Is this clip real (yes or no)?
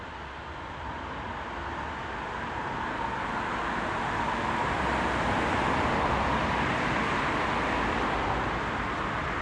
yes